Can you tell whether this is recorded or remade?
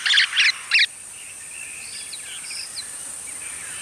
recorded